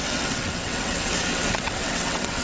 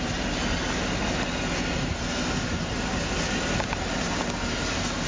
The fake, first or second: first